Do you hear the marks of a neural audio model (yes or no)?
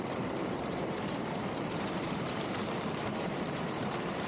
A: yes